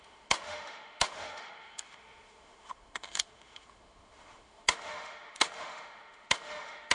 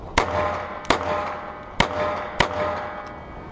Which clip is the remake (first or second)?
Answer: first